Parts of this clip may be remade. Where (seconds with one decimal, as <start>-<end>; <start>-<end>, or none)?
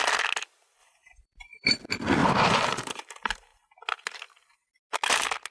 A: 0.8-1.7; 2.2-3.0